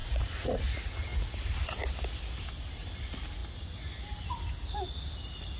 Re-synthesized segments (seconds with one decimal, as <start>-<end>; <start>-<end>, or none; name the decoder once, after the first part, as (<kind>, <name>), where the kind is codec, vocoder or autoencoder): 0.0-0.6 (vocoder, Vocos)